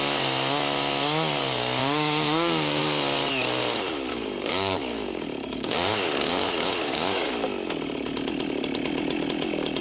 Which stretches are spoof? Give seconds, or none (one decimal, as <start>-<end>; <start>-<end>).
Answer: 1.8-2.8; 4.1-7.3